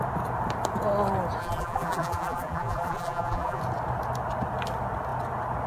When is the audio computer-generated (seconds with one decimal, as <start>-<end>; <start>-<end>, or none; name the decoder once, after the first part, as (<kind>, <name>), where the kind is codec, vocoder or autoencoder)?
1.4-3.6 (vocoder, BigVGAN v2)